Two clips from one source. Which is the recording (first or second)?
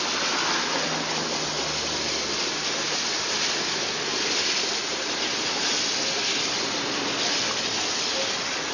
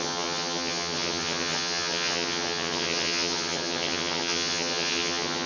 first